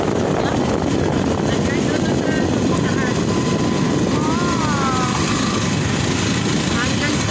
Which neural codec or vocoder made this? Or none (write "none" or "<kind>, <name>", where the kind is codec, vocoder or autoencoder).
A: none